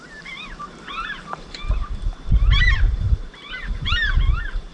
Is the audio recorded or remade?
remade